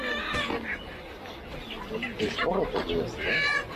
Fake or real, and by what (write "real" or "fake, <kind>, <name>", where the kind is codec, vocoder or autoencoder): real